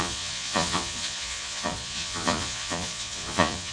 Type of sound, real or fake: fake